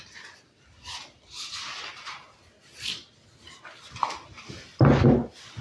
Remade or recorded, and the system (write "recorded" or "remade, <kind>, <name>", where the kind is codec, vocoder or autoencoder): recorded